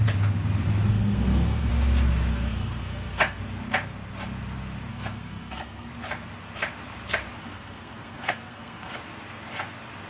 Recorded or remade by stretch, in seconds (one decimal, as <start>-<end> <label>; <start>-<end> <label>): 0.0-0.9 recorded; 0.9-1.7 remade; 1.7-2.3 recorded; 2.3-3.4 remade; 3.4-4.9 recorded; 4.9-5.9 remade; 5.9-7.4 recorded; 7.4-9.0 remade; 9.0-10.1 recorded